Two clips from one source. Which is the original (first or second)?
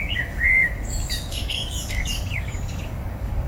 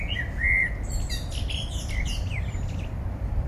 second